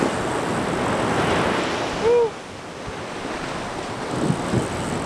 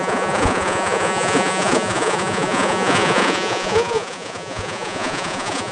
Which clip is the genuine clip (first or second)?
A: first